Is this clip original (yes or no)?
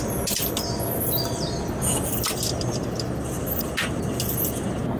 yes